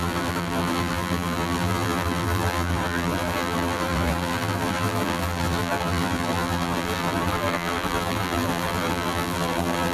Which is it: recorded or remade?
remade